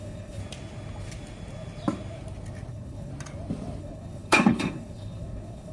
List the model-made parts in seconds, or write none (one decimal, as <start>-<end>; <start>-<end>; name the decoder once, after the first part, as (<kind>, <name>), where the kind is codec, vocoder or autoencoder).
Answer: 0.0-0.4 (codec, HILCodec); 2.7-3.1; 3.8-5.7